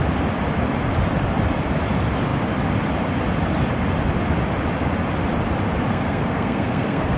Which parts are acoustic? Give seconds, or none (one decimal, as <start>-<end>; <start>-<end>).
0.0-5.9